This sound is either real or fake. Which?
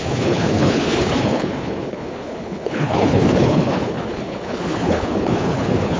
fake